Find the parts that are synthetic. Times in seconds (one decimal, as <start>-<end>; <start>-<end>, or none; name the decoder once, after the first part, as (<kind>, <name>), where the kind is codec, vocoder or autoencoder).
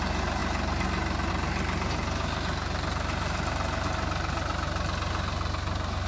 none